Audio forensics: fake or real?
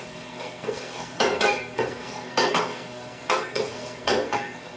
fake